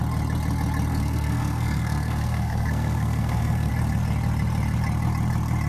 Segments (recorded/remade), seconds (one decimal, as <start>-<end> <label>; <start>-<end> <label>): 0.0-0.9 recorded; 0.9-3.7 remade; 3.7-5.7 recorded